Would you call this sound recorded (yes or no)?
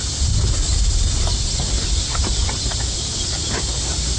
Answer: yes